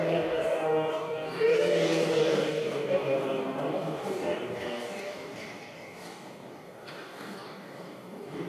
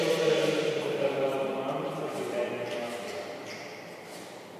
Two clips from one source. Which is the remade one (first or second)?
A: first